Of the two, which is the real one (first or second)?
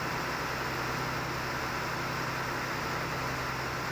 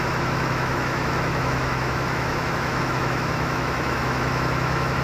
first